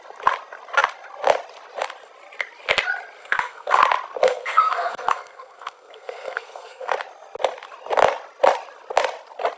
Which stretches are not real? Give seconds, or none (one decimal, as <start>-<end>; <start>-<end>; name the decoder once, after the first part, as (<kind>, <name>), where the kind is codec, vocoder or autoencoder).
3.2-3.8 (codec, SNAC); 4.2-6.9